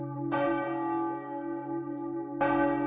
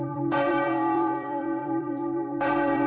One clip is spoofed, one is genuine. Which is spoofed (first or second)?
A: second